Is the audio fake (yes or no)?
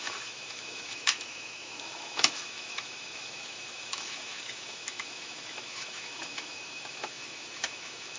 yes